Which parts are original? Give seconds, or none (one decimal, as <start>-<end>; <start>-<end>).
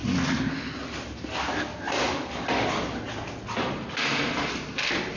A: 0.0-5.2